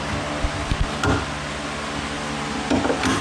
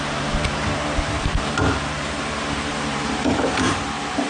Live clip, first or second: first